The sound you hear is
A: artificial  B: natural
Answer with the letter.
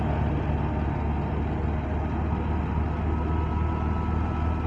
B